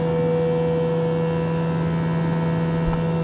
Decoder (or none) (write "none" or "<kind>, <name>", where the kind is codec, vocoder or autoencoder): none